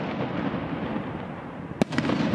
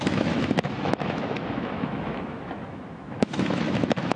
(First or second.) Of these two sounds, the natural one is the first